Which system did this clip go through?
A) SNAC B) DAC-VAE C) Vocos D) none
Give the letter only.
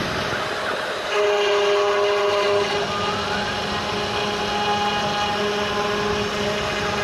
D